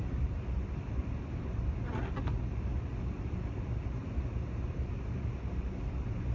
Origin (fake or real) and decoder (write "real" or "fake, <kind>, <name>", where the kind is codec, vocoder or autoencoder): real